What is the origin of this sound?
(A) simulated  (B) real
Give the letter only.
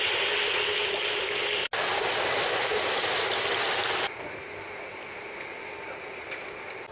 B